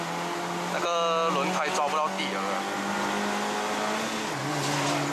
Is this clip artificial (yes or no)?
no